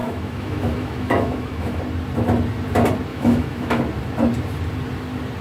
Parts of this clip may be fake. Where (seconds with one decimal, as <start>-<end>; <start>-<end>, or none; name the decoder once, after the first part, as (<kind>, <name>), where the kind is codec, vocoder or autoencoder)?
0.0-1.8 (autoencoder, DAC-VAE); 3.1-3.8